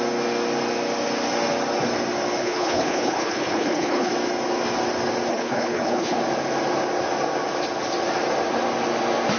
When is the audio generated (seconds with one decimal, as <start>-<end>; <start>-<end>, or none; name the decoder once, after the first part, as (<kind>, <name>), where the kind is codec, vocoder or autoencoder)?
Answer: 2.4-4.1 (codec, HILCodec); 5.3-6.2